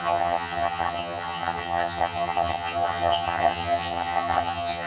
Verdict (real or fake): fake